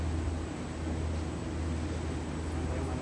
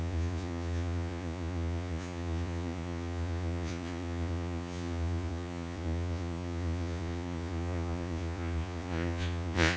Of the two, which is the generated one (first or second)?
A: second